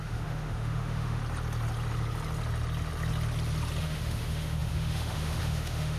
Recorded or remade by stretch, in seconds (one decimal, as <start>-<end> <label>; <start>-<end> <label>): 0.0-1.2 remade; 1.2-3.8 recorded; 3.8-6.0 remade